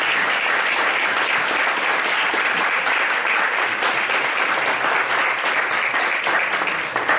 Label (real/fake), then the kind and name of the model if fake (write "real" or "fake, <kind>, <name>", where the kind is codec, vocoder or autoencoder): real